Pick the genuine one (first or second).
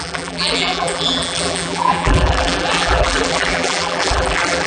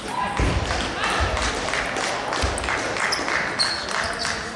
second